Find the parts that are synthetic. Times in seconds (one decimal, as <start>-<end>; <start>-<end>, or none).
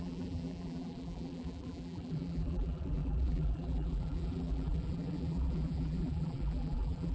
0.0-7.1